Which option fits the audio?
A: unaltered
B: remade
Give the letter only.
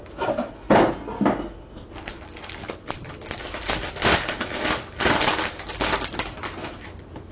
A